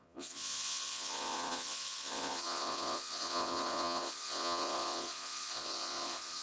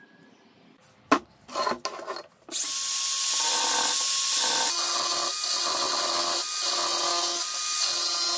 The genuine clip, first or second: second